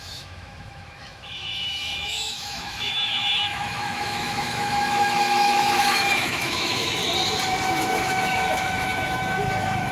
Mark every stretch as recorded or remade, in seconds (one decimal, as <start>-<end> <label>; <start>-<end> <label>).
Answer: 0.0-7.0 remade; 7.0-7.6 recorded; 7.6-9.9 remade